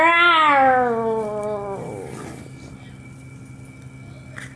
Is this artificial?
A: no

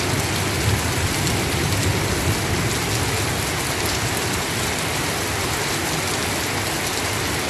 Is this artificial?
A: no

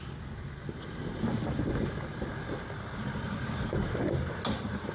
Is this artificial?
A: no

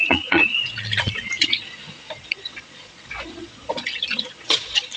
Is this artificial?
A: yes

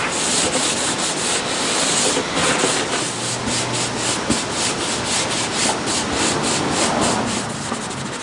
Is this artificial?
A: no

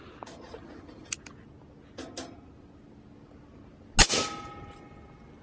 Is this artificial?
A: no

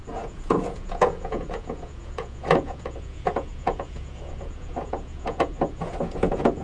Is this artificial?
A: yes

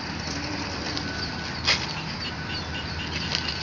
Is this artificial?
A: no